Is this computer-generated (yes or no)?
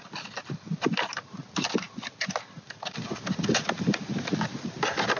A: no